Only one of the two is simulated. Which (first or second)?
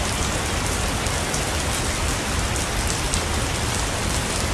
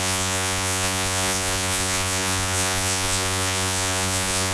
second